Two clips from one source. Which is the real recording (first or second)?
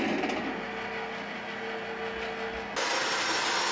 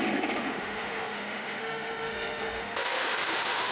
first